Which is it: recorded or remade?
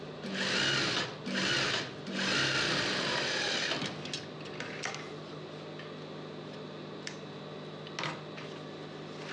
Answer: recorded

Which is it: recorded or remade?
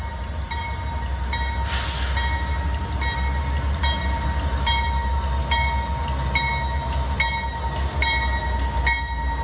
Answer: recorded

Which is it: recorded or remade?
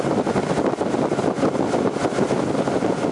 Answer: recorded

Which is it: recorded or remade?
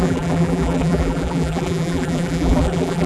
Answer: remade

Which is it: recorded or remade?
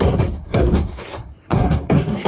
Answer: remade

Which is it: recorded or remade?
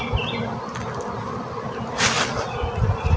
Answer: recorded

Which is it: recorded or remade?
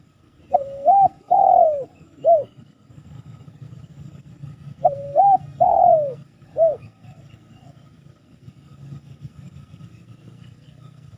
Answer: remade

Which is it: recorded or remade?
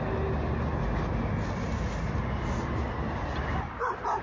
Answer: recorded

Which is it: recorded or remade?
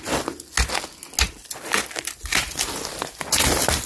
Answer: recorded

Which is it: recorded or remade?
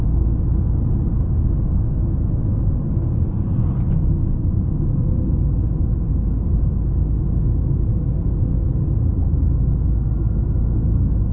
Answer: recorded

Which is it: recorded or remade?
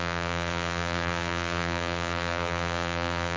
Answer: remade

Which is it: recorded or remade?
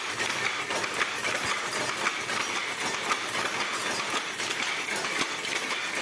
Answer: recorded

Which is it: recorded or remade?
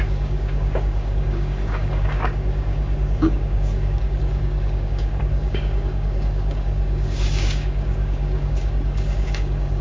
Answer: remade